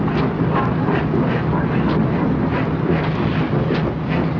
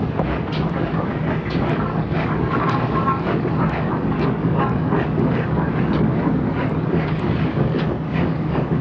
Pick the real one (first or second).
first